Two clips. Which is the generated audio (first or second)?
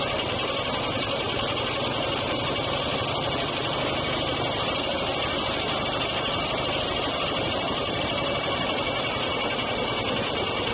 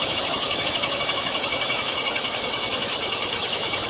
second